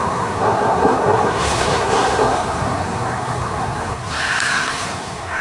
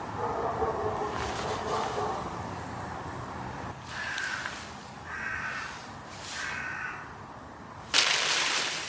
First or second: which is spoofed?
first